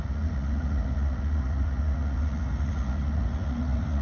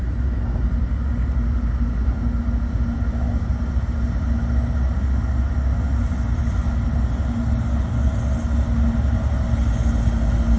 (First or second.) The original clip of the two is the second